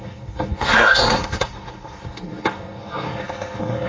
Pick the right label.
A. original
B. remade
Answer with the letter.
B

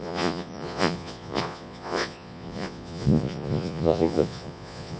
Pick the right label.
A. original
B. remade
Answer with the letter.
B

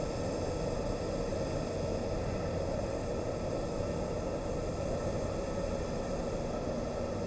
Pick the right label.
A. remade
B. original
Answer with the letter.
B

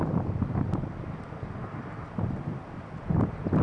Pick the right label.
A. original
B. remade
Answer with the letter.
A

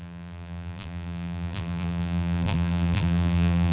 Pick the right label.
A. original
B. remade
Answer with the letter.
B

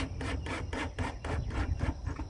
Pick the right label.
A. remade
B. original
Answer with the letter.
B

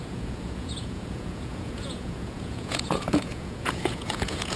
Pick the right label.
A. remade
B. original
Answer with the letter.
A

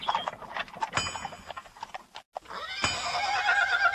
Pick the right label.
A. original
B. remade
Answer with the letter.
A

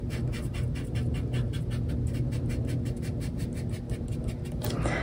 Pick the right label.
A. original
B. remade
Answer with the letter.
A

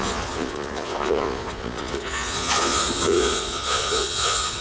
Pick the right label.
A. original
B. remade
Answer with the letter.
B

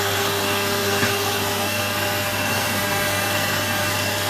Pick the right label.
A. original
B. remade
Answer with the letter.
B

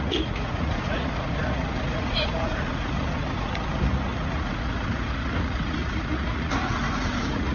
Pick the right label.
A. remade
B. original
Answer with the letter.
A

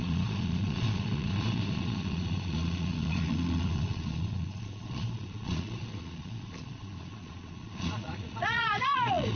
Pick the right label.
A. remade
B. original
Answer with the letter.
A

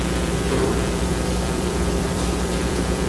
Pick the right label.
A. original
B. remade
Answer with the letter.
B